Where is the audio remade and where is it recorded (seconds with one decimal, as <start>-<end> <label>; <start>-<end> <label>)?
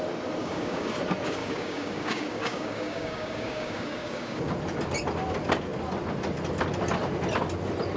0.0-0.4 recorded; 0.4-0.9 remade; 0.9-1.4 recorded; 1.4-4.4 remade; 4.4-8.0 recorded